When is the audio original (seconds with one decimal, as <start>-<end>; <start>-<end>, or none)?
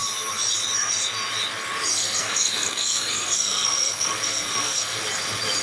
0.0-1.9; 5.0-5.6